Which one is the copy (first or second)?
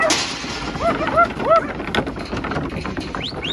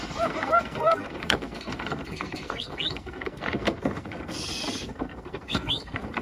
second